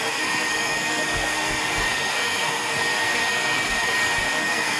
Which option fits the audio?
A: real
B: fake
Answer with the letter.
B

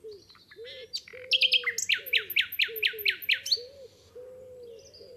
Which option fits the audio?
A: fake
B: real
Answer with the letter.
B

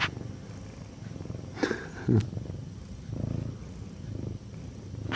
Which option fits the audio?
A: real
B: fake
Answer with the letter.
A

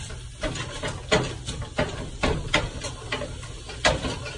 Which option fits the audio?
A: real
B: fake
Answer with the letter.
A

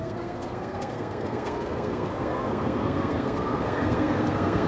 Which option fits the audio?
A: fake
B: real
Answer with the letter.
A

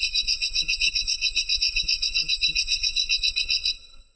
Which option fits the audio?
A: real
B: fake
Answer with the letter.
B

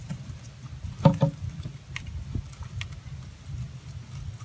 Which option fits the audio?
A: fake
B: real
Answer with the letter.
B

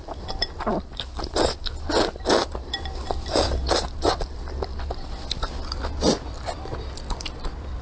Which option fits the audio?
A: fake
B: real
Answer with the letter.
B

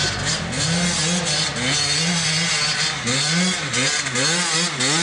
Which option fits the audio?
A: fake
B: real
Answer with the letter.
B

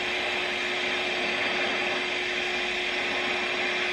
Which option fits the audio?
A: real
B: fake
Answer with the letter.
A